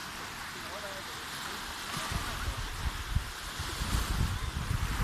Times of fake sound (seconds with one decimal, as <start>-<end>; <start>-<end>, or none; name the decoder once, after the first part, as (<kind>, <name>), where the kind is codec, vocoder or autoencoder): none